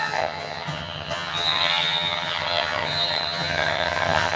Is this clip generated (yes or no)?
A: yes